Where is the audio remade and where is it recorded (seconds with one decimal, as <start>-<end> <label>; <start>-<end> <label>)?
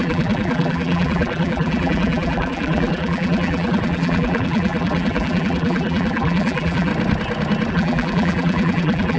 0.0-6.9 remade; 6.9-7.7 recorded; 7.7-9.2 remade